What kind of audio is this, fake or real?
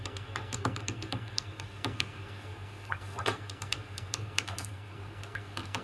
fake